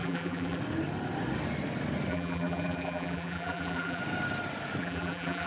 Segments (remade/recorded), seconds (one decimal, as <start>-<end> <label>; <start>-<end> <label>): 0.0-0.6 remade; 0.6-2.1 recorded; 2.1-4.0 remade; 4.0-4.8 recorded; 4.8-5.5 remade